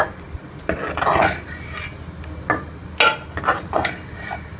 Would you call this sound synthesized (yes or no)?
no